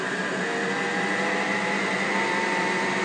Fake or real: real